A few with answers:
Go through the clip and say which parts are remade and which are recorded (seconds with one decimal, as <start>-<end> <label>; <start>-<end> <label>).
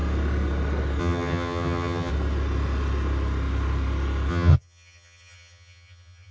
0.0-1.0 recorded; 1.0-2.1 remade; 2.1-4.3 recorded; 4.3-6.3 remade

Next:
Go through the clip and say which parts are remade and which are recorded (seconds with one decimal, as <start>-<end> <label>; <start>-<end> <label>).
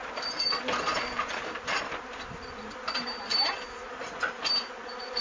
0.0-5.2 recorded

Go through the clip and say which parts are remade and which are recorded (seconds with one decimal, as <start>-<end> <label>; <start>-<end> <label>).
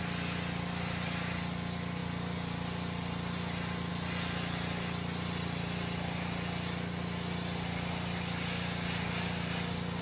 0.0-10.0 recorded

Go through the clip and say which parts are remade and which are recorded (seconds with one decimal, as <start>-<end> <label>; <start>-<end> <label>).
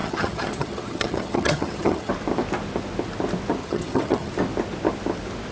0.0-2.1 remade; 2.1-3.6 recorded; 3.6-4.3 remade; 4.3-5.5 recorded